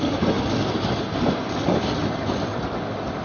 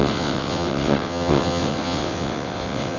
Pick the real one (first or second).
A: first